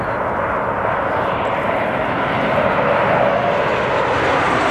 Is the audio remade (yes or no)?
no